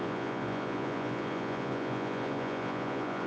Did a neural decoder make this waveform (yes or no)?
yes